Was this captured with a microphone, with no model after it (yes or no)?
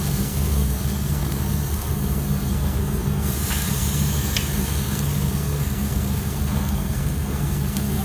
no